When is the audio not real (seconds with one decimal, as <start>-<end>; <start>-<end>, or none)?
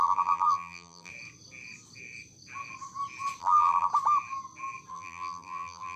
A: 0.0-1.1; 3.4-3.9; 4.9-6.0